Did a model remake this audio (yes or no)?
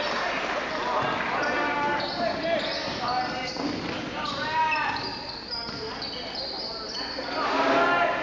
no